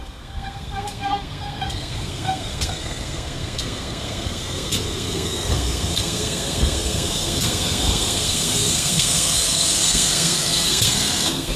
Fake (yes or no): yes